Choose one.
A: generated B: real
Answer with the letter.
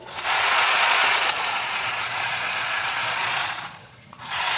A